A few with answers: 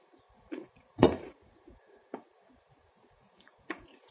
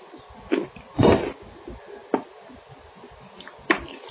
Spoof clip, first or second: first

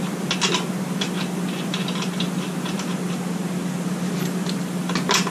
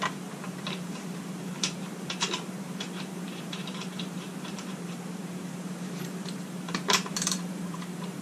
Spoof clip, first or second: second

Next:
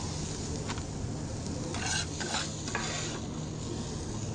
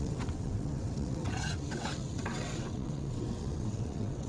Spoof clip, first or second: second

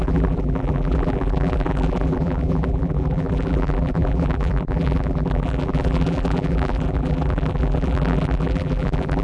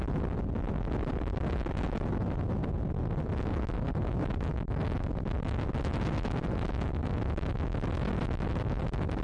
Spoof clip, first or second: first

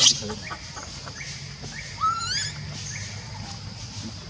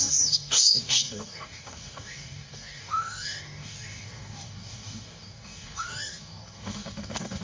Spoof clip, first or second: second